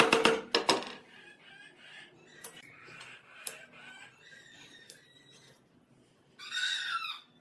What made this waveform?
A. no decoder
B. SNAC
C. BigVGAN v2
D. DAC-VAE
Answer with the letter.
A